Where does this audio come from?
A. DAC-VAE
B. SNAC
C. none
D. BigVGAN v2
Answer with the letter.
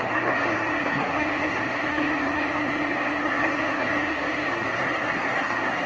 B